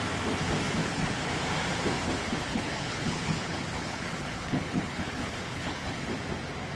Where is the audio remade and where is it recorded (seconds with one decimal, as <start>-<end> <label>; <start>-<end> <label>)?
0.0-0.8 recorded; 0.8-1.3 remade; 1.3-2.2 recorded; 2.2-6.1 remade; 6.1-6.8 recorded